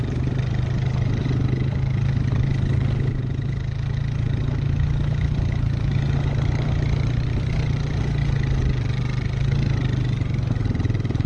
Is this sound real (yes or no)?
yes